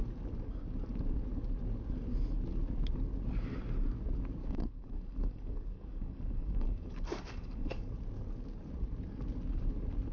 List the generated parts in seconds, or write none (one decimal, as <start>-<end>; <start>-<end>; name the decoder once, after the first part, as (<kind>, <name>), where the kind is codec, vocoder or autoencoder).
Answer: 4.4-7.9 (codec, DAC)